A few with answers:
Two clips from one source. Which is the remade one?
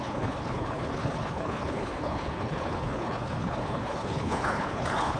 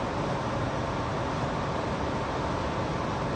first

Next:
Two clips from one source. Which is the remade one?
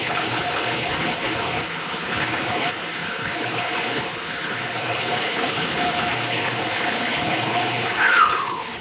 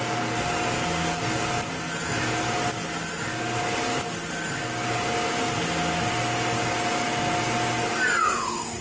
first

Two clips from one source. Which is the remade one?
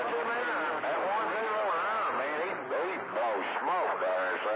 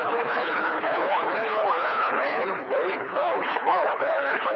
second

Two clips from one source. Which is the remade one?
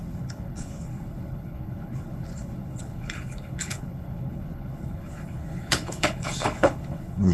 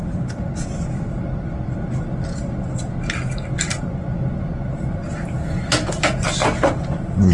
first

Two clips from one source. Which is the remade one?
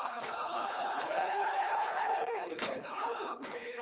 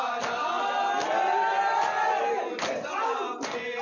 first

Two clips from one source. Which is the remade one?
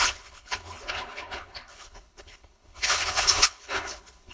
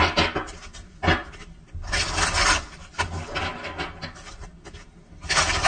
first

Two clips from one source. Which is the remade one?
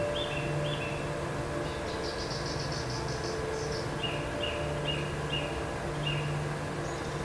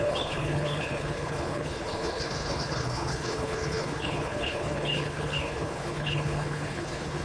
second